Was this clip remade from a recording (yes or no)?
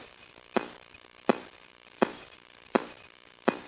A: yes